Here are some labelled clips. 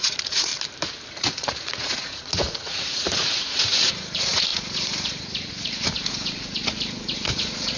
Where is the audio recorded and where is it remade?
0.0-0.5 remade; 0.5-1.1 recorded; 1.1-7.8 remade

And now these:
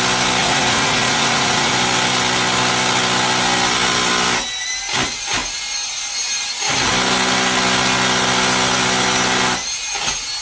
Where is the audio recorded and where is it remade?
0.0-0.4 recorded; 0.4-1.7 remade; 1.7-10.4 recorded

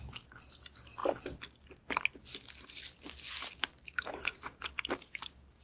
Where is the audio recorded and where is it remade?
0.0-5.6 recorded

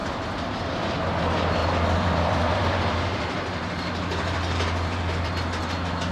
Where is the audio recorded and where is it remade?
0.0-1.2 remade; 1.2-1.6 recorded; 1.6-5.3 remade; 5.3-6.1 recorded

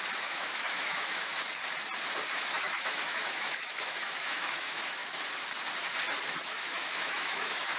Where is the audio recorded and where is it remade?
0.0-1.3 remade; 1.3-2.3 recorded; 2.3-5.0 remade; 5.0-6.3 recorded; 6.3-7.8 remade

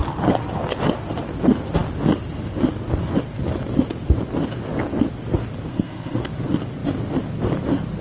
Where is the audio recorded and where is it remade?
0.0-5.7 recorded; 5.7-6.2 remade; 6.2-8.0 recorded